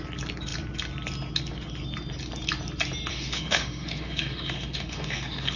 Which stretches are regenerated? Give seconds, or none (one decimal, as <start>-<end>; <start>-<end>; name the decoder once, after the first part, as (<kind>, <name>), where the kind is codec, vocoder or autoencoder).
3.1-5.6 (autoencoder, DAC-VAE)